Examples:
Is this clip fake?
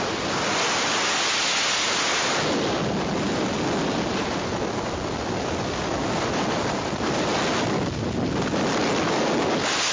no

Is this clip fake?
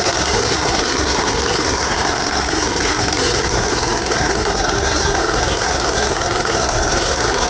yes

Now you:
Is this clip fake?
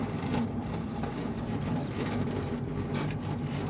yes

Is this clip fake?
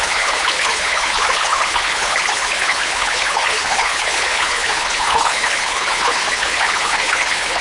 yes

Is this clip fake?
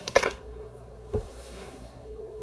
yes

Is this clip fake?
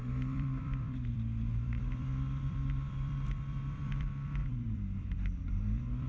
yes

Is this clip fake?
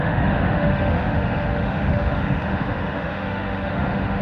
yes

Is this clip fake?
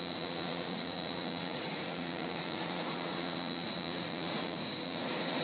yes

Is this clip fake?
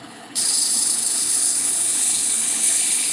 yes